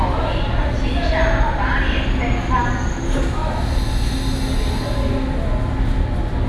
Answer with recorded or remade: recorded